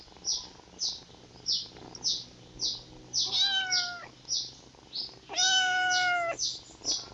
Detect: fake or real real